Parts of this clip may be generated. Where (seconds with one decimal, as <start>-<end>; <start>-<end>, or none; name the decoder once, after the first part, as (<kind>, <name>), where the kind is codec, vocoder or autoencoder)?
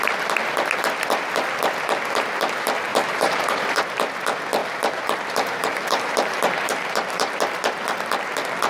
2.9-4.0 (vocoder, BigVGAN v2); 4.6-7.3